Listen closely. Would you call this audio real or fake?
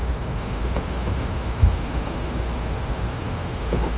fake